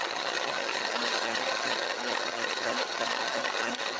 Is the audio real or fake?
fake